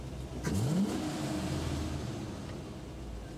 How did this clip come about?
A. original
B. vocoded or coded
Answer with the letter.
A